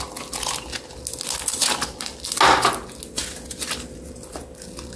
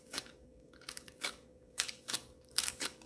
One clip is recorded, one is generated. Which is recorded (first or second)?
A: first